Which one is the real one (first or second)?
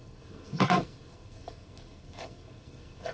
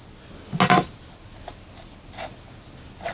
second